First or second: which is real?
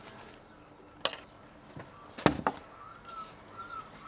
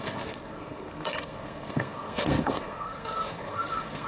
first